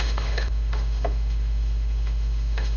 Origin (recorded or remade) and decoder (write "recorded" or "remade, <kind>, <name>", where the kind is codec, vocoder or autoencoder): remade, autoencoder, DAC-VAE